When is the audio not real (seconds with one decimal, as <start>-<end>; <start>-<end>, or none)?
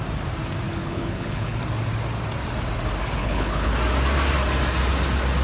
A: 0.8-1.6; 3.2-3.7